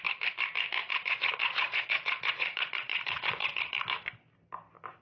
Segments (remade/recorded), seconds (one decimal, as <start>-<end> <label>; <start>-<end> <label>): 0.0-0.8 recorded; 0.8-3.8 remade; 3.8-5.0 recorded